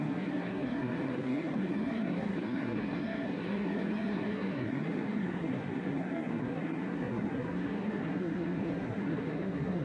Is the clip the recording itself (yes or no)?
no